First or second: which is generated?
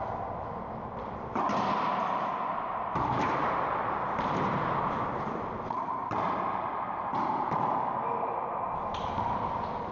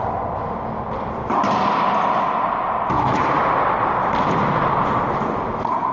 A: first